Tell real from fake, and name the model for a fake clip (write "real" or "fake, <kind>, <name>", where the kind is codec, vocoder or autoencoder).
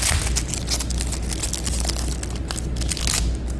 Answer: real